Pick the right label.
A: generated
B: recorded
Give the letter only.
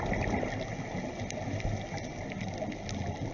B